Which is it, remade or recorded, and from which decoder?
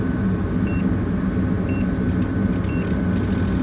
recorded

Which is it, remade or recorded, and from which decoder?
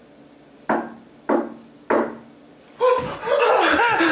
recorded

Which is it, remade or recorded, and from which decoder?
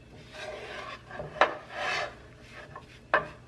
recorded